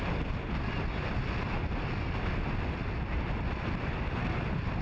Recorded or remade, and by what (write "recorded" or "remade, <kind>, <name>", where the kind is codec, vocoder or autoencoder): recorded